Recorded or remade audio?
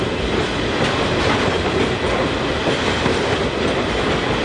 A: recorded